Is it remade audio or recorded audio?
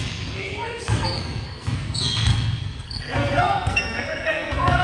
remade